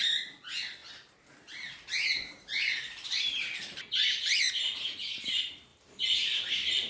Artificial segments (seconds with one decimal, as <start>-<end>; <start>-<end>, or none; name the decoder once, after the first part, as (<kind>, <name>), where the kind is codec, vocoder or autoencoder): 0.8-3.8 (vocoder, BigVGAN v2); 5.7-6.9